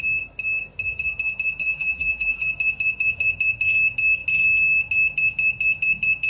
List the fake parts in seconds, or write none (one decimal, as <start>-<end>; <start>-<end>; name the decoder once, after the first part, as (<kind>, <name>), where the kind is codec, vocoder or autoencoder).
1.6-2.5 (vocoder, BigVGAN v2)